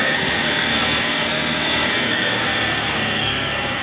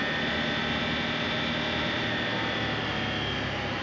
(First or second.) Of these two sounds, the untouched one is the second